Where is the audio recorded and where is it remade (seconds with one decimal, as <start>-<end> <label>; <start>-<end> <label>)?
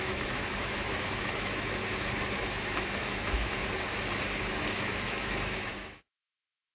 0.0-1.8 remade; 1.8-2.3 recorded; 2.3-3.6 remade; 3.6-4.4 recorded; 4.4-6.7 remade